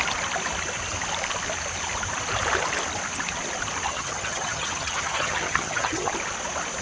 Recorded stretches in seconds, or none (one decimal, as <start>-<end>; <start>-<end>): 0.0-3.9; 6.1-6.8